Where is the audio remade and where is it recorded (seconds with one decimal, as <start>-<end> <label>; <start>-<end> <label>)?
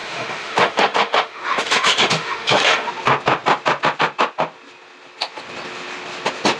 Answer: 0.0-2.9 remade; 2.9-6.6 recorded